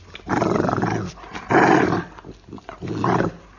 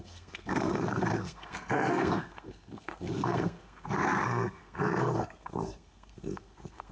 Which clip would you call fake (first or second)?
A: second